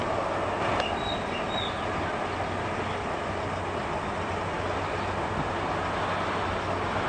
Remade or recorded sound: recorded